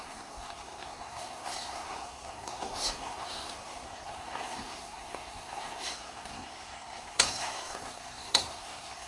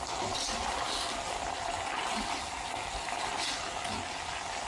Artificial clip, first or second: first